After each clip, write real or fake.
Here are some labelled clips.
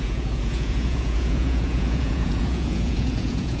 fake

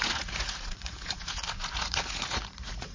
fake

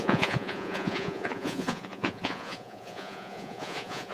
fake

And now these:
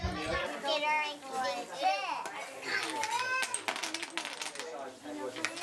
real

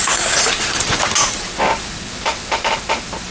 real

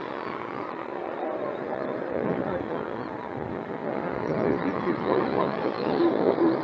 fake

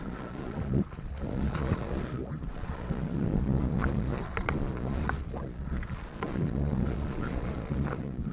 fake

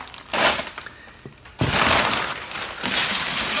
real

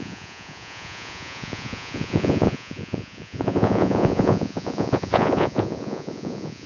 fake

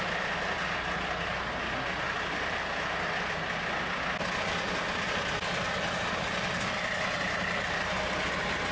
real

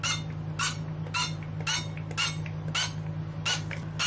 real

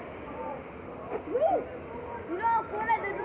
real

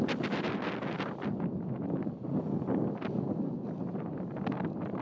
real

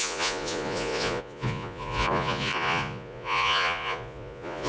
fake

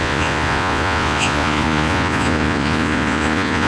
fake